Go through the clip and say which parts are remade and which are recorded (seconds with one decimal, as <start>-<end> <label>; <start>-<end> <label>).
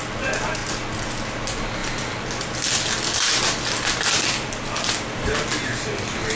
0.0-6.4 recorded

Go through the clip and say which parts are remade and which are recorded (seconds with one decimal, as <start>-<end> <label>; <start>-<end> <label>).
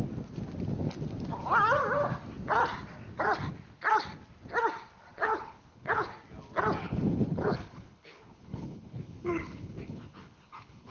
0.0-5.2 recorded; 5.2-6.1 remade; 6.1-6.8 recorded; 6.8-10.9 remade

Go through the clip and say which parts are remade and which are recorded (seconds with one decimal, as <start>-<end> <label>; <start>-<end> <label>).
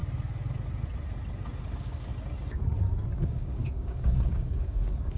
0.0-1.6 recorded; 1.6-2.1 remade; 2.1-3.2 recorded; 3.2-5.2 remade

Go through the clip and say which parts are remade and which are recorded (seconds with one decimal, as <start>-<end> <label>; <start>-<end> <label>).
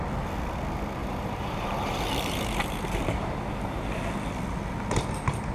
0.0-1.0 recorded; 1.0-4.0 remade; 4.0-5.5 recorded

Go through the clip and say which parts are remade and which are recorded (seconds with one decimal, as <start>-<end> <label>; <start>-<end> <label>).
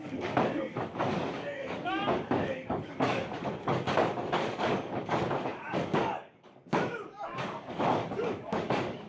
0.0-9.1 remade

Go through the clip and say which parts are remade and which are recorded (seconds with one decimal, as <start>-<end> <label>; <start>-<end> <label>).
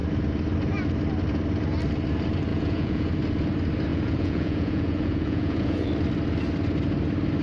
0.0-2.5 recorded; 2.5-3.1 remade; 3.1-3.9 recorded; 3.9-5.9 remade; 5.9-7.4 recorded